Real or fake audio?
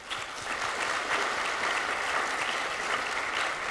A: real